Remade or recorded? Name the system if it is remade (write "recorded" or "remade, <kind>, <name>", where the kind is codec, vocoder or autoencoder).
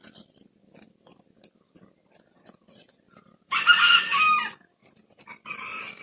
recorded